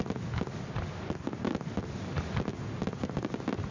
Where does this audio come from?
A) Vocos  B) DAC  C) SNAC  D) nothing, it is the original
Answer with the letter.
D